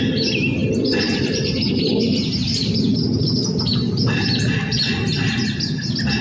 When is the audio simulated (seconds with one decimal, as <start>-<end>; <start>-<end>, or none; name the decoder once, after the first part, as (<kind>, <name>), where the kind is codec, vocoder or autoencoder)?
none